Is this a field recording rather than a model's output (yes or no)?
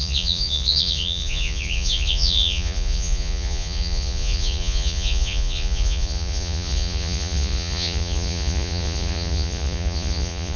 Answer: no